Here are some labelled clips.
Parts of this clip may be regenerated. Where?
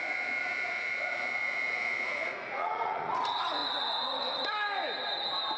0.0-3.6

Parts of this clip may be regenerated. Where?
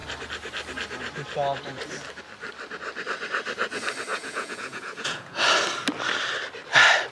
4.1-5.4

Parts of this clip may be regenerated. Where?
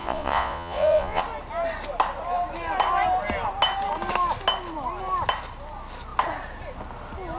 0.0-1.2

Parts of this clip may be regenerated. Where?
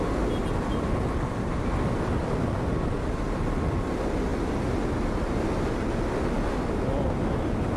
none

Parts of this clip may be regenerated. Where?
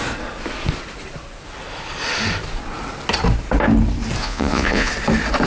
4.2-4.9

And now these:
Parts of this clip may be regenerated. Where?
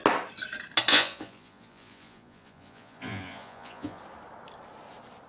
0.9-4.0